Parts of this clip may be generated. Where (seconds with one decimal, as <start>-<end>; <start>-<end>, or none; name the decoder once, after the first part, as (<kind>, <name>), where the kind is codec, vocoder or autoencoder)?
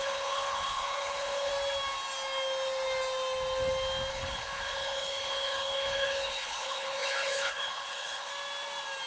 0.0-1.5 (codec, HILCodec); 4.1-8.3